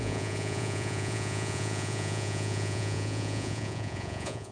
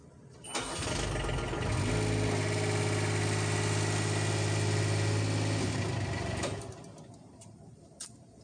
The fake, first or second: first